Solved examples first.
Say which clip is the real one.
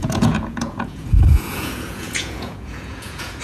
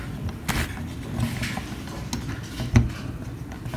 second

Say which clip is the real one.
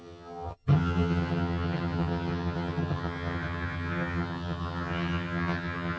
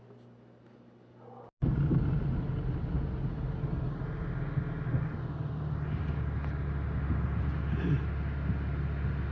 second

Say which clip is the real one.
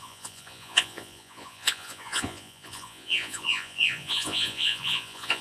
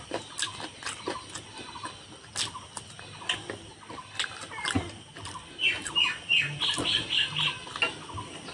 second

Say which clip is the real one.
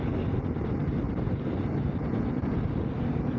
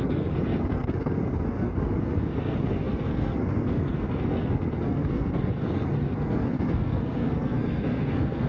first